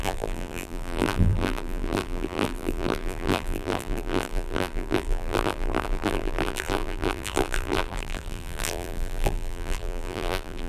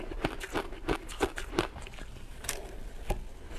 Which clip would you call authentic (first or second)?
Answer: second